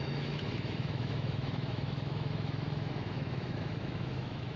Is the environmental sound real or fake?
fake